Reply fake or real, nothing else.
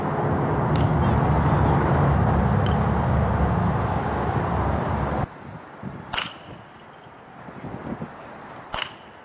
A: real